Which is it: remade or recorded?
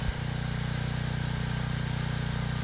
recorded